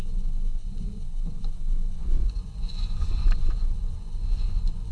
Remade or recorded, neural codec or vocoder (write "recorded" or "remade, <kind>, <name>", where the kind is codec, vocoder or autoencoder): remade, vocoder, Vocos